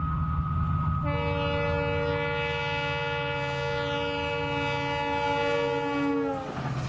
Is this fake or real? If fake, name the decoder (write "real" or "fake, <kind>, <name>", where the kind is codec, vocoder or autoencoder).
real